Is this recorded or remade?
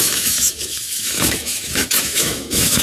remade